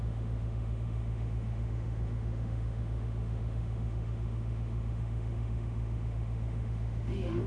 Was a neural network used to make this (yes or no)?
yes